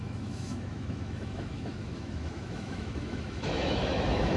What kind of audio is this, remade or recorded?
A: remade